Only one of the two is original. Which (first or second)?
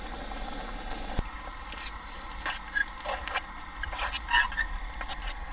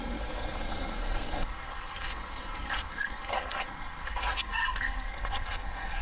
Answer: first